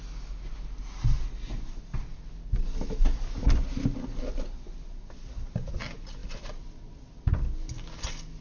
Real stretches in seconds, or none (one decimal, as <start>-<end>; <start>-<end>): 0.0-8.4